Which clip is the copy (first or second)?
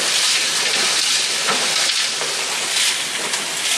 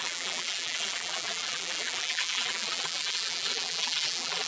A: second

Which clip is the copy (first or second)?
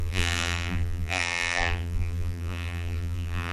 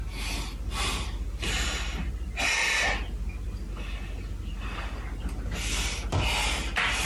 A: first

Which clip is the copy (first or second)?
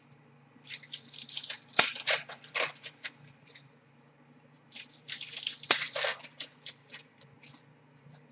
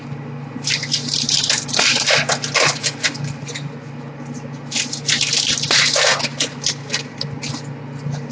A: first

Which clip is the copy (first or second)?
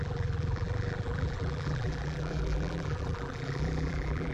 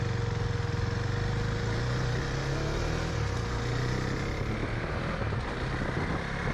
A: first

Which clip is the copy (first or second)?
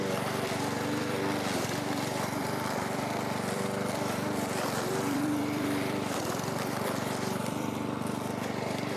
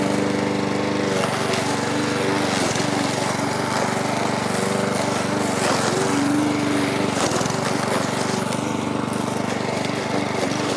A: first